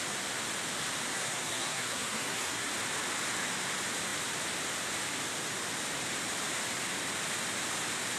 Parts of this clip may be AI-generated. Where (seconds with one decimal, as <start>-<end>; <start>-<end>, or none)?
1.1-2.7